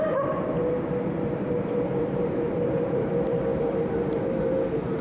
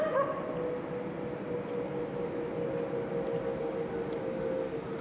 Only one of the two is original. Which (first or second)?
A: second